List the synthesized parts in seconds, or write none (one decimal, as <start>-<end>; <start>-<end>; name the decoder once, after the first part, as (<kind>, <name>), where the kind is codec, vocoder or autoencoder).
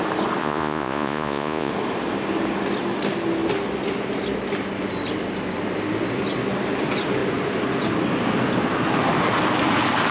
0.4-1.7 (vocoder, Vocos)